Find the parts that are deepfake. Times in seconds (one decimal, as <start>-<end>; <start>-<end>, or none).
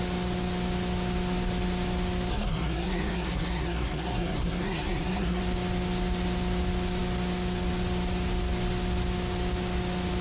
2.3-5.4